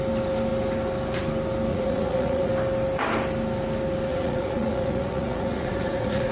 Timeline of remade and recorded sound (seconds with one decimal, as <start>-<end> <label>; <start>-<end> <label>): 0.0-1.7 recorded; 1.7-2.5 remade; 2.5-4.1 recorded; 4.1-6.3 remade